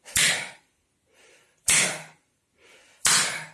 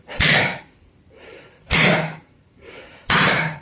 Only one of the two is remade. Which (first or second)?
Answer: second